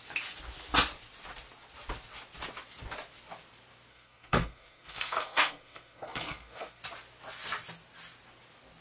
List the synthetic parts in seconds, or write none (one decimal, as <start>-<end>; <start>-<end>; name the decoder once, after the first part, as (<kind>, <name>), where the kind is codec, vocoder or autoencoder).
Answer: 3.9-6.8 (codec, SNAC)